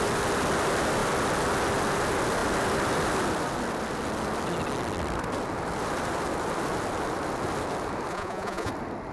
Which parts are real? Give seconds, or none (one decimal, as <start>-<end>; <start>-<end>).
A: 0.0-8.1; 8.7-9.1